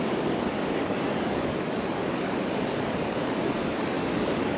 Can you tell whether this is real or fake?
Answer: fake